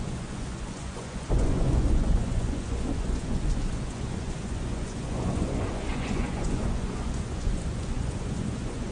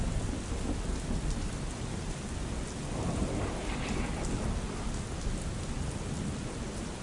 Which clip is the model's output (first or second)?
first